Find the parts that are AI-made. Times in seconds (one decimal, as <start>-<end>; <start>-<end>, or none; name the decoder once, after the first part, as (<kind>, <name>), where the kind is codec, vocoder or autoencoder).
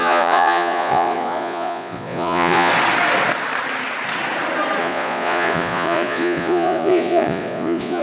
0.0-2.7 (vocoder, Vocos); 4.8-8.0